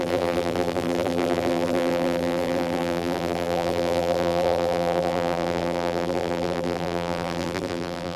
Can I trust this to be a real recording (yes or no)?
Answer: no